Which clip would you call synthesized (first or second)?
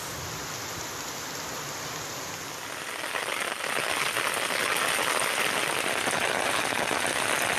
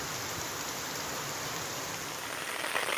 second